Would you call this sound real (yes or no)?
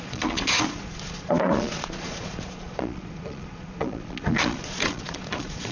no